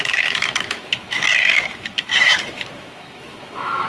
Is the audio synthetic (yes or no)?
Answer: yes